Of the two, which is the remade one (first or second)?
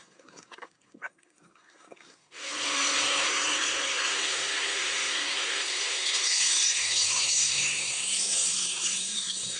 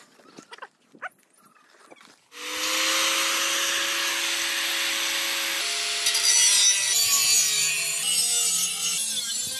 first